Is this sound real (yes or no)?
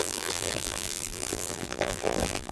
no